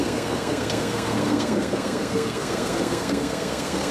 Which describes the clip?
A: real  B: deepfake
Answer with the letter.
B